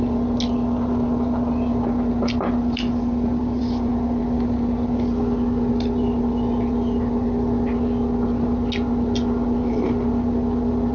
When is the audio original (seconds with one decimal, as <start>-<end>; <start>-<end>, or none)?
0.0-10.9